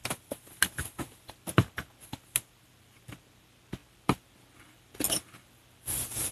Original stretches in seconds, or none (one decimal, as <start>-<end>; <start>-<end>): 0.0-6.3